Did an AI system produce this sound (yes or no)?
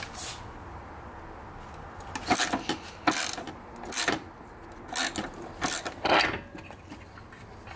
no